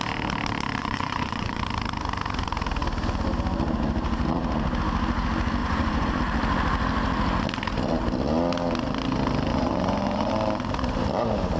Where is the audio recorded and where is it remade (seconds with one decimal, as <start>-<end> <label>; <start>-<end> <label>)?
0.0-0.8 recorded; 0.8-1.6 remade; 1.6-5.6 recorded; 5.6-6.2 remade; 6.2-9.5 recorded; 9.5-10.3 remade; 10.3-11.6 recorded

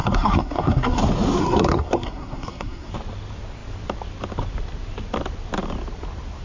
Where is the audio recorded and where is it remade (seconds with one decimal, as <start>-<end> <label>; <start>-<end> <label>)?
0.0-1.0 remade; 1.0-1.4 recorded; 1.4-2.9 remade; 2.9-6.4 recorded

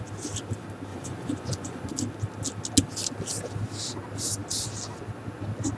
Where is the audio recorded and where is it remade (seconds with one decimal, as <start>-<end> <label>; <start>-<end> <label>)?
0.0-0.9 recorded; 0.9-1.9 remade; 1.9-5.8 recorded

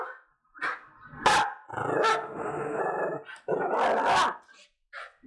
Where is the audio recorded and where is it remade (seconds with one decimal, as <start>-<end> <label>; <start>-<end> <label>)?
0.0-2.1 recorded; 2.1-2.8 remade; 2.8-5.3 recorded